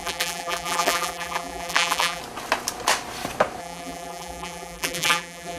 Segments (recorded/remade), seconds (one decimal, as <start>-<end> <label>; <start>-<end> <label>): 0.0-2.2 remade; 2.2-3.6 recorded; 3.6-5.6 remade